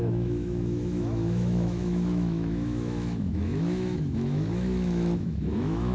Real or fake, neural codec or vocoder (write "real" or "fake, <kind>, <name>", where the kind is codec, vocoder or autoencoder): fake, autoencoder, DAC-VAE